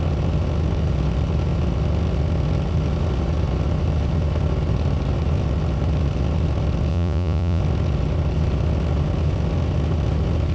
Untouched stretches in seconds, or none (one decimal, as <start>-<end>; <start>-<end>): 0.0-6.9; 7.6-10.5